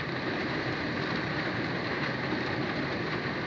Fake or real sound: fake